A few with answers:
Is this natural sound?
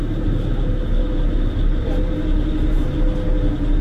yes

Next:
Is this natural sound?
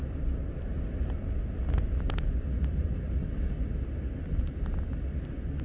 yes